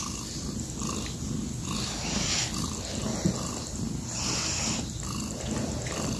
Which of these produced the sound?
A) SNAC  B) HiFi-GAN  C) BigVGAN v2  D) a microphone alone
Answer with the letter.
D